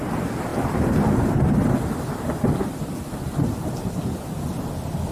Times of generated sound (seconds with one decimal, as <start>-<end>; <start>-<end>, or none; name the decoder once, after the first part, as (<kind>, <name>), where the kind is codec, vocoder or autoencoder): none